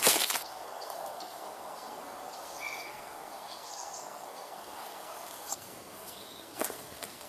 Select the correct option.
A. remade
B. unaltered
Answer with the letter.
A